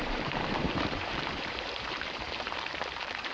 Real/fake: fake